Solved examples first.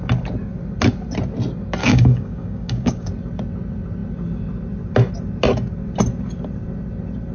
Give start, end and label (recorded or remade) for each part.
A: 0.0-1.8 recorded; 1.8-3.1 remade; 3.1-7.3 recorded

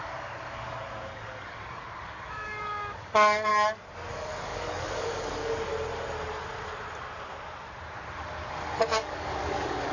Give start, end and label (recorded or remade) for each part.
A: 0.0-3.5 remade; 3.5-4.1 recorded; 4.1-5.7 remade; 5.7-8.5 recorded; 8.5-9.9 remade

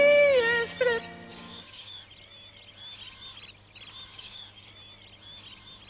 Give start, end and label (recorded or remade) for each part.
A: 0.0-1.3 recorded; 1.3-2.0 remade; 2.0-4.1 recorded; 4.1-4.7 remade; 4.7-5.9 recorded

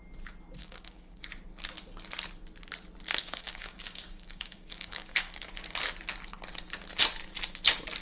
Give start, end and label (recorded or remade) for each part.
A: 0.0-0.6 recorded; 0.6-1.2 remade; 1.2-3.2 recorded; 3.2-5.5 remade; 5.5-8.0 recorded

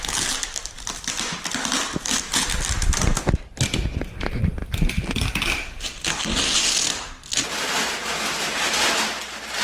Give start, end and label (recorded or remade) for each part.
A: 0.0-9.6 recorded

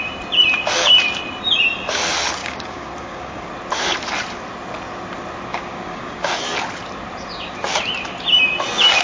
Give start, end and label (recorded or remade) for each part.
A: 0.0-2.4 recorded; 2.4-3.5 remade; 3.5-5.5 recorded; 5.5-6.3 remade; 6.3-9.0 recorded